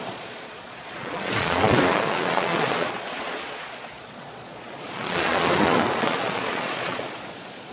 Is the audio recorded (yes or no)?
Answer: no